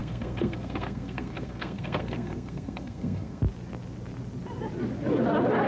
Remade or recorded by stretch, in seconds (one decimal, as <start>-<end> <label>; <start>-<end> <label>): 0.0-3.4 remade; 3.4-5.7 recorded